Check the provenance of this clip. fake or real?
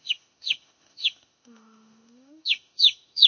fake